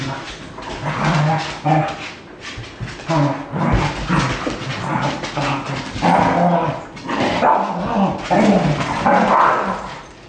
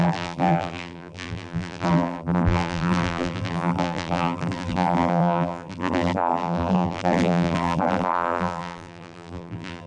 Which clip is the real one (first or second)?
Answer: first